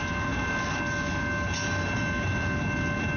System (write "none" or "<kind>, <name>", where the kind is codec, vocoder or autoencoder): none